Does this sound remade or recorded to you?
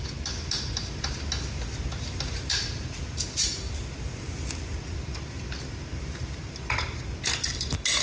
recorded